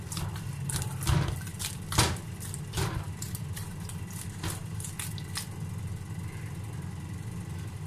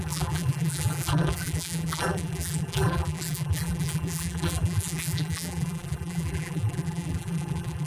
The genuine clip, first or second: first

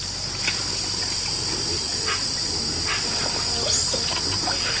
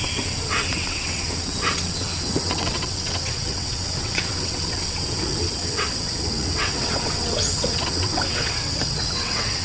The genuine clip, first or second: first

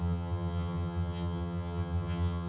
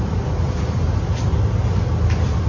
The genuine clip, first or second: second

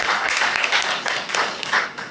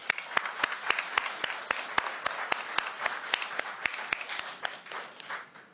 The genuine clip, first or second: second